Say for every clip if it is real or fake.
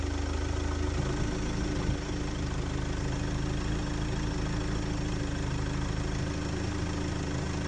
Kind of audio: real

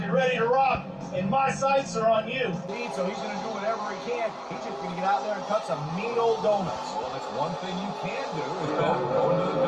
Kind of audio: real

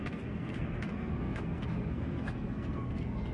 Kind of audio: fake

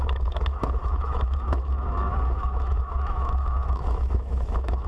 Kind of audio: fake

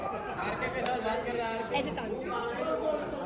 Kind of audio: real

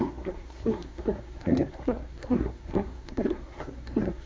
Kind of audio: fake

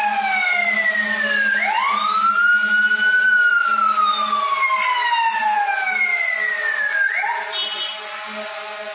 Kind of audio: real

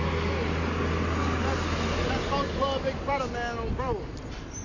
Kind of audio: real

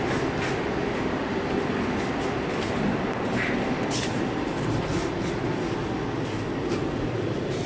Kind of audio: real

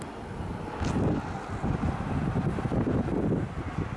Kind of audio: real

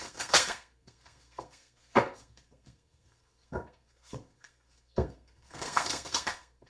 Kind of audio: fake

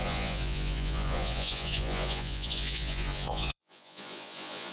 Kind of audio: fake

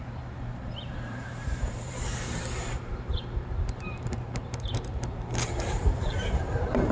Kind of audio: fake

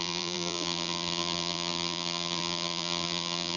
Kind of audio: fake